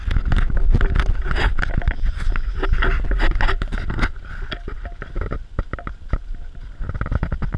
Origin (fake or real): real